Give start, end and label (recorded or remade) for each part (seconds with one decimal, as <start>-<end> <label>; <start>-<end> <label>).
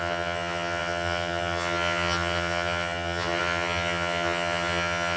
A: 0.0-5.2 remade